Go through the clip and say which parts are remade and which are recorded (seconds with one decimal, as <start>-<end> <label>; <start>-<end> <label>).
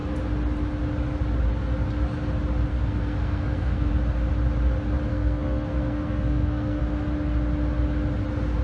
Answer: 0.0-2.7 recorded; 2.7-3.9 remade; 3.9-5.1 recorded; 5.1-6.8 remade; 6.8-8.6 recorded